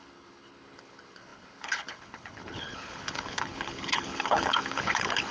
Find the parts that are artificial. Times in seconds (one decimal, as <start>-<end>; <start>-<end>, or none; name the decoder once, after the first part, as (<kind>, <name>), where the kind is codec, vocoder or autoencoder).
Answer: 0.0-5.3 (codec, HILCodec)

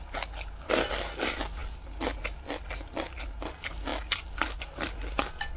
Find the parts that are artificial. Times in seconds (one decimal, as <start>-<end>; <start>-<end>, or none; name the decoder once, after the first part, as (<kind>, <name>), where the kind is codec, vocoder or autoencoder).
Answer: none